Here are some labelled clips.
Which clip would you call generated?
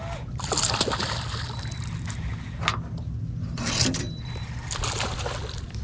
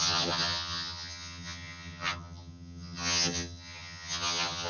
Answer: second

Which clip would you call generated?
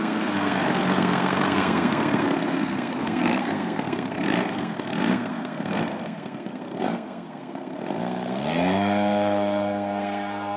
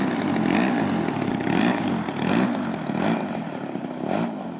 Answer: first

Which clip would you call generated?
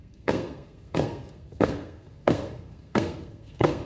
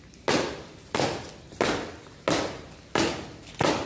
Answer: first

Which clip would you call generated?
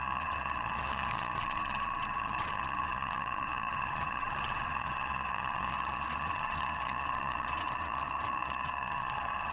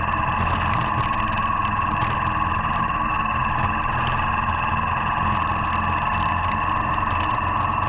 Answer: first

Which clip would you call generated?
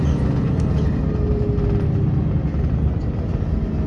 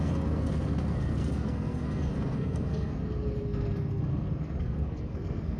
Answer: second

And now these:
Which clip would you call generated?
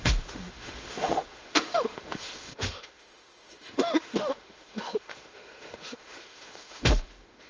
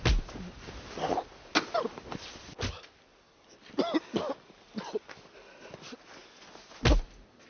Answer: first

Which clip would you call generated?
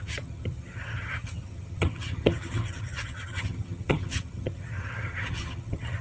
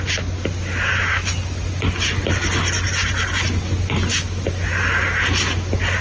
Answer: first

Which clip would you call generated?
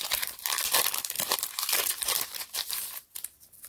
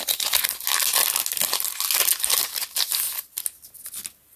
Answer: first